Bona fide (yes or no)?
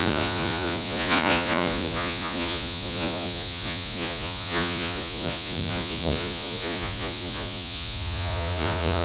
no